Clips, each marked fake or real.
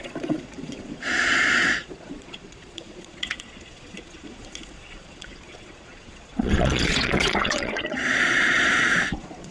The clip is fake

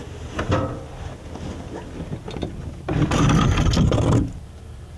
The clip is real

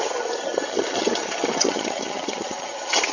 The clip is fake